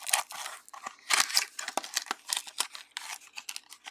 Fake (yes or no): no